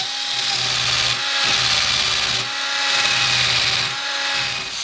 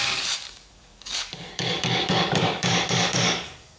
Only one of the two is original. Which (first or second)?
first